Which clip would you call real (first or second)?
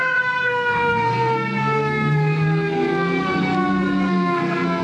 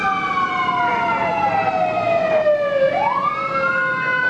second